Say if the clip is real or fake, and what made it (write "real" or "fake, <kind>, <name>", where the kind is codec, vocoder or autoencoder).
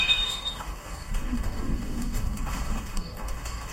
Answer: fake, codec, DAC